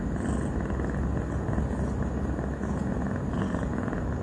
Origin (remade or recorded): recorded